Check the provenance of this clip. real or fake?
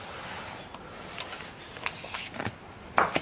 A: real